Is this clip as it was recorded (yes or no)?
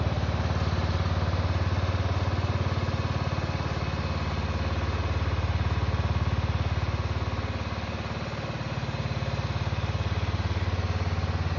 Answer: yes